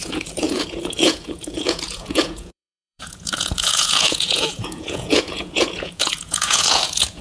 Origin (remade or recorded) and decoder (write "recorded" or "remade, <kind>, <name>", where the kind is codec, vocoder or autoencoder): remade, vocoder, Vocos